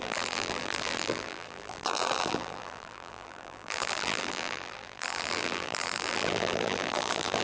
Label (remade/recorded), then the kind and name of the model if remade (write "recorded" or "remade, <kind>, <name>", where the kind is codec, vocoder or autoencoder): remade, vocoder, BigVGAN v2